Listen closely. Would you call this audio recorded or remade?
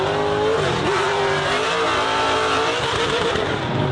recorded